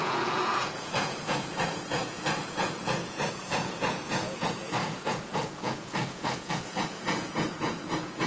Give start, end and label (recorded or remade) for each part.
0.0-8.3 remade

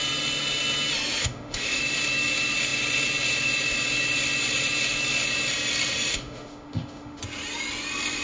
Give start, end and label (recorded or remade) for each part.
0.0-1.2 recorded; 1.2-1.8 remade; 1.8-6.1 recorded; 6.1-7.2 remade; 7.2-8.2 recorded

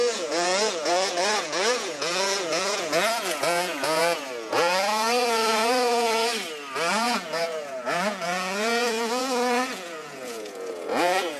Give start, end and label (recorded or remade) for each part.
0.0-6.3 remade; 6.3-6.9 recorded; 6.9-11.4 remade

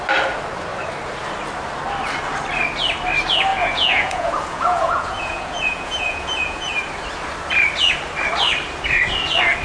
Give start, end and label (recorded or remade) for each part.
0.0-3.5 recorded; 3.5-6.8 remade; 6.8-9.6 recorded

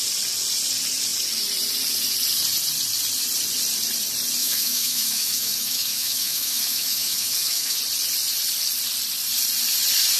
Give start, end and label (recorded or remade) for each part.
0.0-4.4 recorded; 4.4-7.8 remade; 7.8-10.2 recorded

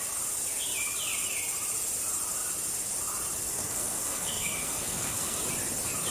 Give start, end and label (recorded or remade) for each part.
0.0-3.5 recorded; 3.5-5.4 remade; 5.4-6.1 recorded

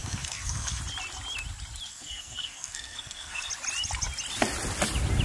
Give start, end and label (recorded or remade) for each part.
0.0-0.8 remade; 0.8-1.9 recorded; 1.9-3.5 remade; 3.5-5.2 recorded